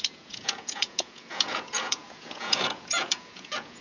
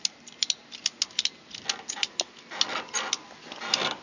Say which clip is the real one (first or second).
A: second